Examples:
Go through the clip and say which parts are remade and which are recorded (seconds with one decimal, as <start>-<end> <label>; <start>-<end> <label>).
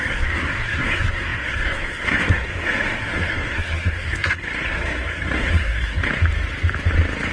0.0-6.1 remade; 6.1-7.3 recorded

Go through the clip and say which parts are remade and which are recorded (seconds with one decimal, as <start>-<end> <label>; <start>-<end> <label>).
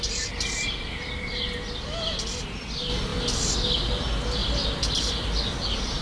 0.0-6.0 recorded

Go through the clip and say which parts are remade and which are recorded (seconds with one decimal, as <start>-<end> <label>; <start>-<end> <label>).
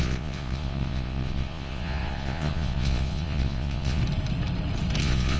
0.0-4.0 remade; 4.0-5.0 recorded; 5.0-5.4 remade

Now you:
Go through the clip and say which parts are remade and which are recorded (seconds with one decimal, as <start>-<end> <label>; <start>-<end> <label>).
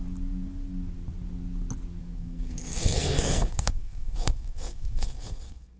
0.0-2.0 recorded; 2.0-5.8 remade